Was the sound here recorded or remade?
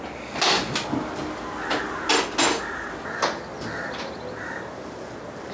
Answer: recorded